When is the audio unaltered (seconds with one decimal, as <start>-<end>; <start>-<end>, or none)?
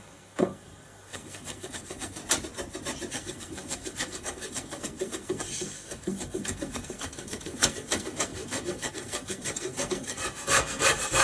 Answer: 2.2-3.1